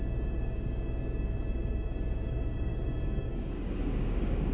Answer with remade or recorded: remade